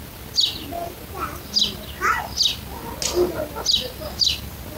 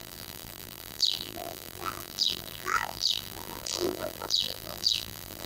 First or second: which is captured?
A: first